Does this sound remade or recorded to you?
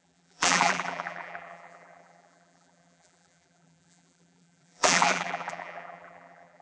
remade